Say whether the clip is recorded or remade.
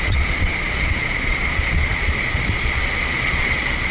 remade